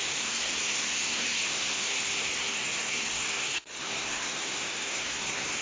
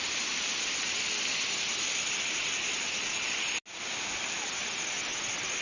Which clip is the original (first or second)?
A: second